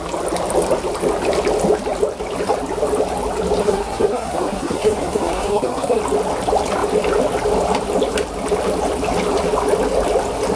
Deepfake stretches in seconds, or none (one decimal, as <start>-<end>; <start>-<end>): 3.6-6.0